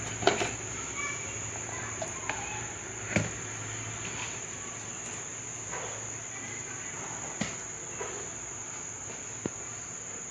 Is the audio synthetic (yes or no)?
no